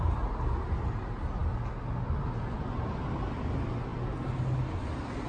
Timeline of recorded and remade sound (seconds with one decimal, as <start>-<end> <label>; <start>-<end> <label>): 0.0-5.3 recorded